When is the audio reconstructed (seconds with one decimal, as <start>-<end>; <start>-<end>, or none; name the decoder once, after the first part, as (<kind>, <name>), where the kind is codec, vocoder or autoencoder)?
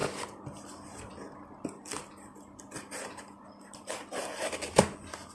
0.0-3.2 (vocoder, BigVGAN v2)